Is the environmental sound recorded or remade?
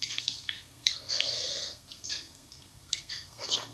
remade